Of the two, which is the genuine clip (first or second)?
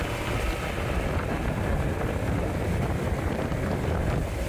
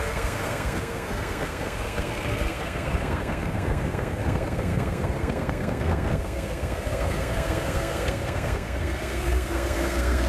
first